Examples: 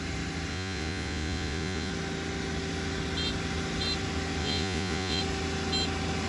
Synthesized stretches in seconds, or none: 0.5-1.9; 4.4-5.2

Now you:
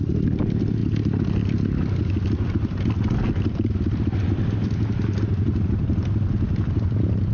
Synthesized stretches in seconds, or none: none

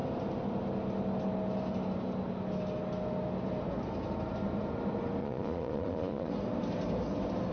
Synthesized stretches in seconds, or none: 5.2-6.3

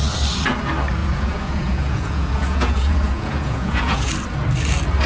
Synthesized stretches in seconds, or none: 1.0-4.1

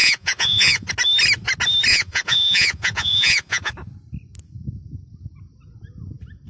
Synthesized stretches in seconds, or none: 0.0-0.9; 1.9-3.7

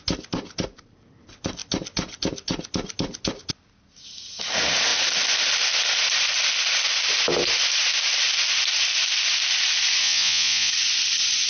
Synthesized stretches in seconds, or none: 10.0-10.7